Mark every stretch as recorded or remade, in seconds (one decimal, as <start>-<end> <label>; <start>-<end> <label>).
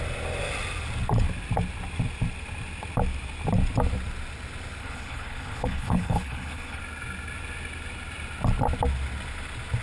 0.0-4.8 recorded; 4.8-6.8 remade; 6.8-9.8 recorded